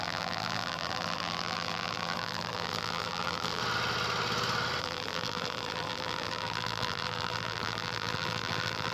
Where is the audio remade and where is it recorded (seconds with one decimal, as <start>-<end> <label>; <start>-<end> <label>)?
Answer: 0.0-3.6 remade; 3.6-4.8 recorded; 4.8-8.9 remade